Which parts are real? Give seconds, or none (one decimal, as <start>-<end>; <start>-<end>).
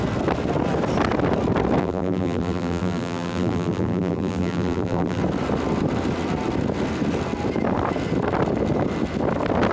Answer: 0.0-1.8; 5.2-9.7